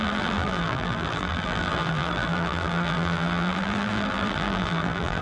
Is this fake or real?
fake